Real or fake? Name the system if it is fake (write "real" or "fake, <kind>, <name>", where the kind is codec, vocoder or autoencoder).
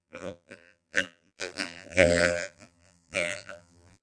fake, vocoder, BigVGAN v2